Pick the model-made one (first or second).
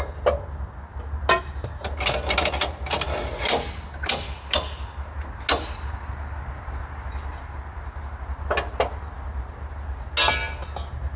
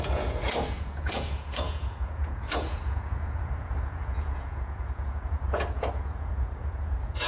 second